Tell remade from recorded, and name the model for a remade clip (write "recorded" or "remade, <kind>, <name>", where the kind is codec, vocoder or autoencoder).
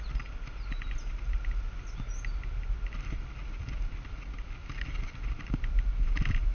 recorded